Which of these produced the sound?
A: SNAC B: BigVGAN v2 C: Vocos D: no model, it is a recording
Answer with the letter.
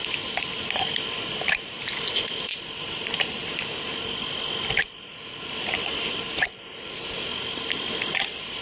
D